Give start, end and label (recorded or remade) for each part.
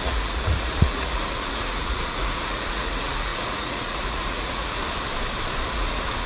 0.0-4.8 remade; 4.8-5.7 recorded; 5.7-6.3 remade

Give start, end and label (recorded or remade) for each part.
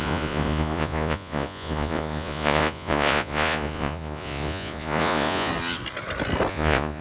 0.0-5.5 remade; 5.5-6.5 recorded; 6.5-7.0 remade